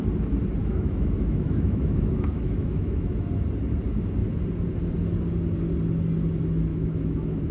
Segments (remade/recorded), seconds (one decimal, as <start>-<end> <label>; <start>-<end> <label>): 0.0-0.6 recorded; 0.6-3.3 remade; 3.3-6.7 recorded; 6.7-7.5 remade